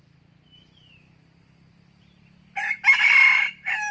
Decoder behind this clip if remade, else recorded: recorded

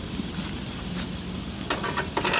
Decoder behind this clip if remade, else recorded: recorded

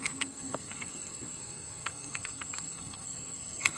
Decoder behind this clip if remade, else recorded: remade, codec, SNAC